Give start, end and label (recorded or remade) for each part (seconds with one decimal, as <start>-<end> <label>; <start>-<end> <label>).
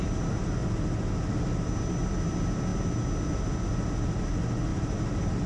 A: 0.0-4.7 recorded; 4.7-5.5 remade